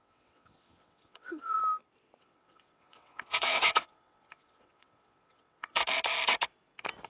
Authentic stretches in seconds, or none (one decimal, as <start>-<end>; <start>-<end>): 1.6-2.2; 5.8-7.1